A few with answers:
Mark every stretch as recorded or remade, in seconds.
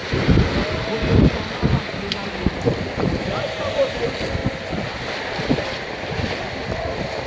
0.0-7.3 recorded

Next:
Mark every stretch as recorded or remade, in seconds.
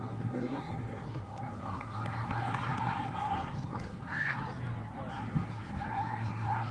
0.0-4.4 remade; 4.4-5.1 recorded; 5.1-6.7 remade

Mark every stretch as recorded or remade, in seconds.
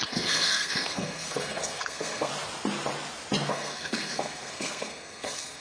0.0-2.3 remade; 2.3-3.5 recorded; 3.5-5.6 remade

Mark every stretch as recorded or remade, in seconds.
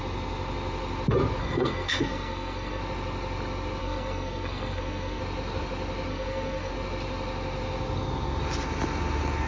0.0-1.4 recorded; 1.4-2.8 remade; 2.8-3.8 recorded; 3.8-5.2 remade; 5.2-6.1 recorded; 6.1-6.7 remade; 6.7-9.5 recorded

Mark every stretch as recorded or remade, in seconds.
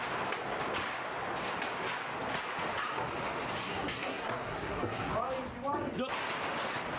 0.0-3.6 recorded; 3.6-5.1 remade; 5.1-7.0 recorded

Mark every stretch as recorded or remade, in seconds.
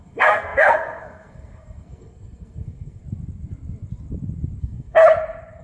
0.0-3.0 remade; 3.0-4.6 recorded; 4.6-5.0 remade; 5.0-5.6 recorded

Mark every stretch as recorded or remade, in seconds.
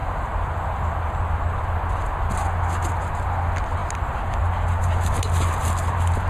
0.0-6.3 recorded